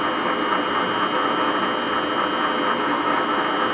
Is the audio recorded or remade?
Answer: recorded